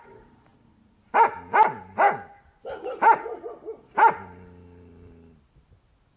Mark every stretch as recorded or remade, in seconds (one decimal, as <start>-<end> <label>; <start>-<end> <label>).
0.0-6.2 recorded